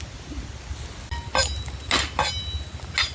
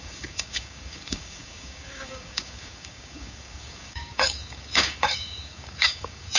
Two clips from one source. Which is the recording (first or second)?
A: first